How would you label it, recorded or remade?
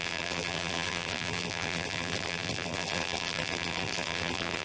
remade